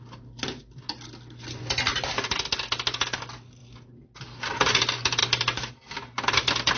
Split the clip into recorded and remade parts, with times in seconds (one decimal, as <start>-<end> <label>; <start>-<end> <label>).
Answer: 0.0-6.8 recorded